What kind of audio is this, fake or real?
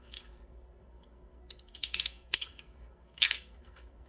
fake